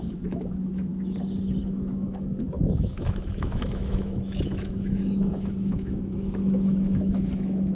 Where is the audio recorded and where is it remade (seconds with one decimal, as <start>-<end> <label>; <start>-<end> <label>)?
0.0-0.9 remade; 0.9-1.6 recorded; 1.6-7.8 remade